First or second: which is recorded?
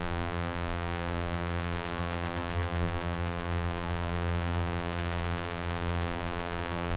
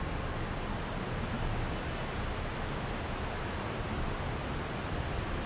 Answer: second